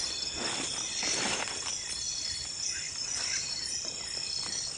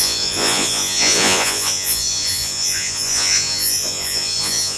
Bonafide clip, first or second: first